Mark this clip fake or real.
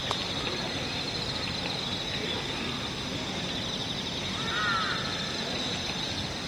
real